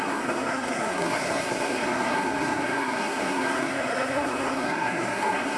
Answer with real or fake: fake